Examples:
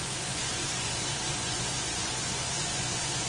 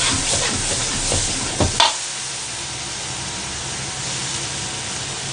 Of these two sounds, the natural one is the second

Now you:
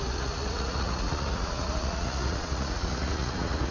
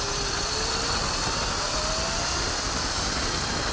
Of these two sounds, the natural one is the second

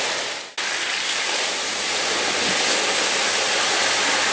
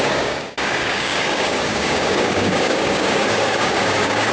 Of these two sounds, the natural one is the first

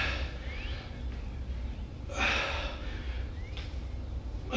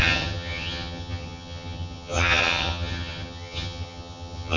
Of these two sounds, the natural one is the first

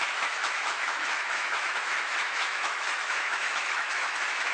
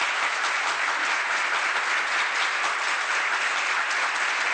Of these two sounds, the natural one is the second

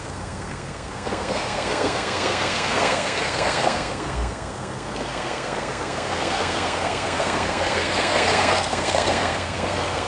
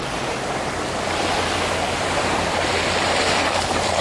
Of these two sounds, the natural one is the second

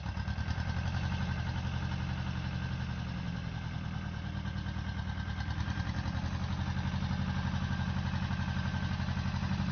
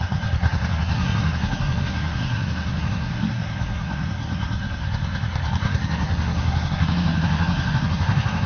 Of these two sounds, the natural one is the first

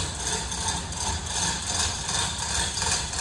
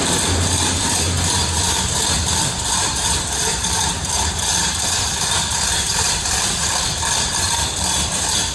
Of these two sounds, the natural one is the first